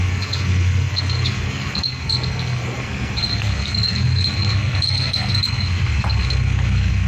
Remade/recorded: remade